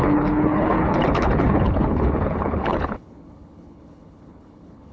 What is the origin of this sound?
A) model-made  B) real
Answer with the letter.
A